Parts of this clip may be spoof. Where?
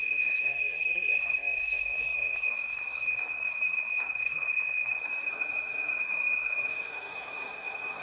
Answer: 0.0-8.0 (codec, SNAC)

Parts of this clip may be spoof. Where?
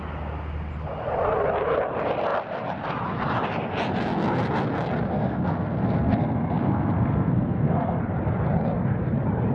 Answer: 5.1-8.0 (codec, SNAC)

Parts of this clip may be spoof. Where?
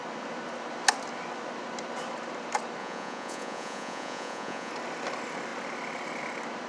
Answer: 2.8-4.7 (vocoder, Vocos)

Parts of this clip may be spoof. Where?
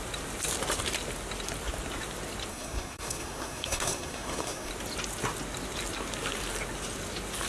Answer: 2.5-4.7 (codec, SNAC)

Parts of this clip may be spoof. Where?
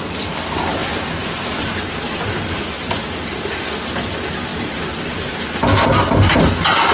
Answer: none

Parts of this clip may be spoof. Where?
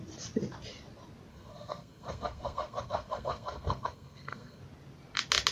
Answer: 1.3-4.6 (codec, SNAC)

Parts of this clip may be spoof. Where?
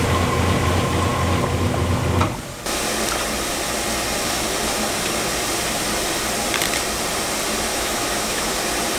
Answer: 7.7-8.5 (autoencoder, DAC-VAE)